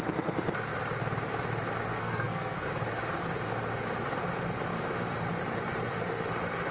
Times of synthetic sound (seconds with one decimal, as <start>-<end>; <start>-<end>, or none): 1.9-2.7